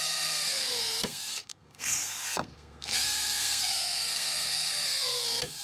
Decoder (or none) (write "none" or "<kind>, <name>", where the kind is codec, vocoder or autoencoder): codec, SNAC